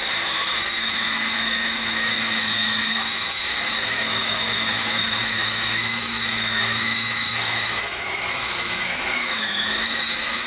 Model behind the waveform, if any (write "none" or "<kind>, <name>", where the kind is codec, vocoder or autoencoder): autoencoder, DAC-VAE